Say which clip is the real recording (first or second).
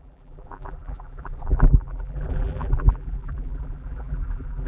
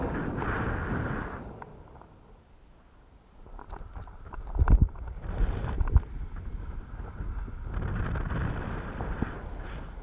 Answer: second